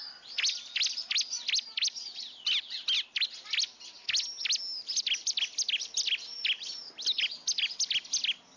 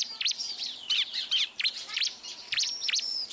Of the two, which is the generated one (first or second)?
second